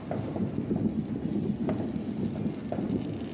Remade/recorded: recorded